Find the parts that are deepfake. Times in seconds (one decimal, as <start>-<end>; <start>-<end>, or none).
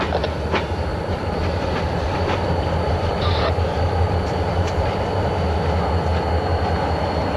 0.9-5.3